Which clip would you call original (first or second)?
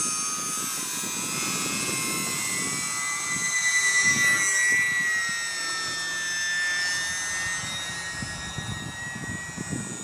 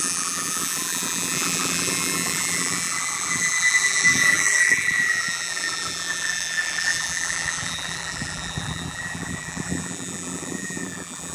first